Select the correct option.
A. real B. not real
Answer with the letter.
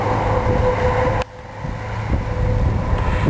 A